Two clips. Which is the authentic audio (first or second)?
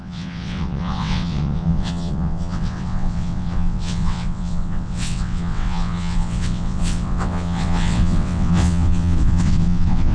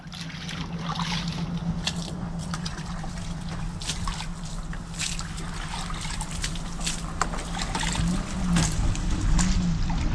second